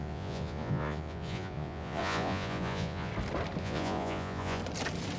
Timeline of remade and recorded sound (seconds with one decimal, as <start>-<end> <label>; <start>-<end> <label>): 0.0-3.1 remade; 3.1-3.6 recorded; 3.6-4.6 remade; 4.6-5.2 recorded